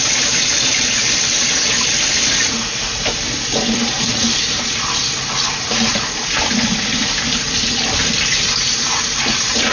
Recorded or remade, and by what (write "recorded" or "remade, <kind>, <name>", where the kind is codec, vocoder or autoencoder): remade, vocoder, BigVGAN v2